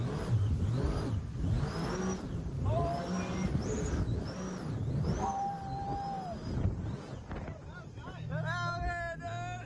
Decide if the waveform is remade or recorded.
recorded